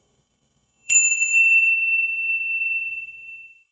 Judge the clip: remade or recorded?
remade